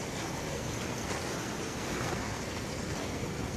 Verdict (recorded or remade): remade